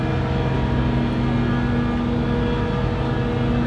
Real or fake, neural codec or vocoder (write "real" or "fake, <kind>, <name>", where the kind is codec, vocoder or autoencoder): real